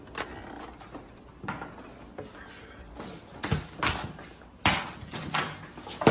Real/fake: real